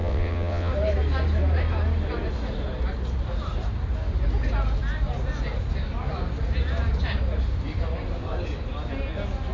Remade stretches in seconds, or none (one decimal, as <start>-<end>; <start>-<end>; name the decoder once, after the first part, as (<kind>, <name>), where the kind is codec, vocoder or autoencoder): 0.0-0.7 (vocoder, WaveNeXt)